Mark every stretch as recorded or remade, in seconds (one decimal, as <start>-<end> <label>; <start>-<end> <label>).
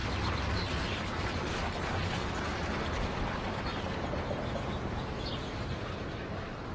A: 0.0-2.2 recorded; 2.2-6.7 remade